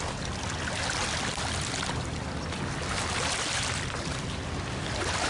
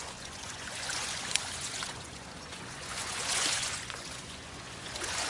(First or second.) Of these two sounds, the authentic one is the first